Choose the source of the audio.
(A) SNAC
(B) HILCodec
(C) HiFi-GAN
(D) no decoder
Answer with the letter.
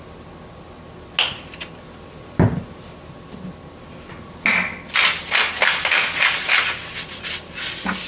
D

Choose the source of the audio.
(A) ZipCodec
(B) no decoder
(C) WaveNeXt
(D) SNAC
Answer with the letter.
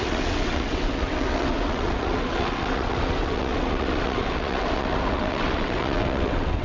C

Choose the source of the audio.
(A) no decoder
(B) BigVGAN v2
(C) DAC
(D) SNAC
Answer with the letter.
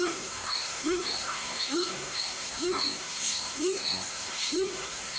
D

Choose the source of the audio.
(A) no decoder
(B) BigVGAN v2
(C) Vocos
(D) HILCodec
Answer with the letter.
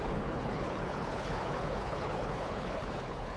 D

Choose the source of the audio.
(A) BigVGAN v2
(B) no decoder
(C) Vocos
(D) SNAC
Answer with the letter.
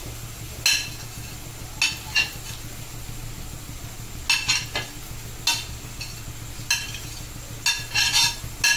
B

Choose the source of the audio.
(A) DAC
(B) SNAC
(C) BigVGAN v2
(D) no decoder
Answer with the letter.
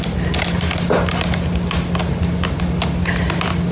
D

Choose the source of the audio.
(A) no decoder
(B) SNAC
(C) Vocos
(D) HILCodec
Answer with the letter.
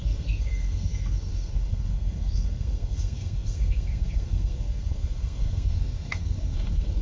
B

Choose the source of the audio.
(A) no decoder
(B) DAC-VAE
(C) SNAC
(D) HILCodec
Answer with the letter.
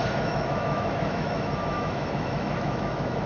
B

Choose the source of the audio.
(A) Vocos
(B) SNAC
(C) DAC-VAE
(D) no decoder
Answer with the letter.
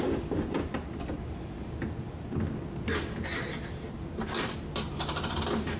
D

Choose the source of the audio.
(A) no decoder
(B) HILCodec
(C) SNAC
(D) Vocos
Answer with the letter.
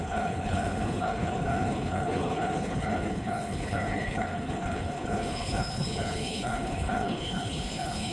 B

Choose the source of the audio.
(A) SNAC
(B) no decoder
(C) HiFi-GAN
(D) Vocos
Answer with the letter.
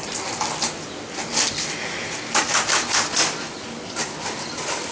B